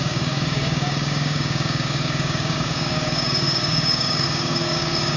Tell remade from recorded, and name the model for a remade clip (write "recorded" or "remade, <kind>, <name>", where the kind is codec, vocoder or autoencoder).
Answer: remade, codec, DAC